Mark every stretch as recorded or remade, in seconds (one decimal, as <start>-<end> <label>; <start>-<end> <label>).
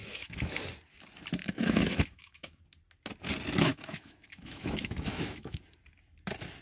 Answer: 0.0-0.5 remade; 0.5-1.4 recorded; 1.4-2.6 remade; 2.6-3.7 recorded; 3.7-5.6 remade; 5.6-6.6 recorded